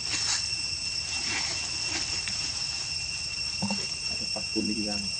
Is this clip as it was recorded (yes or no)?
yes